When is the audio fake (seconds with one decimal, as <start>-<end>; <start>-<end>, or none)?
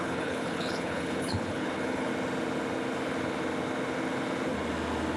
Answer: 0.0-2.1